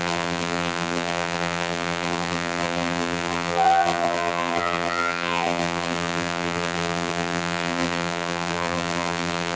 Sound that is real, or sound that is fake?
fake